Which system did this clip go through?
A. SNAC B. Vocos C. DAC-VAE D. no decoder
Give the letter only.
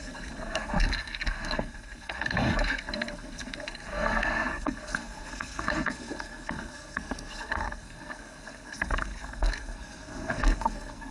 A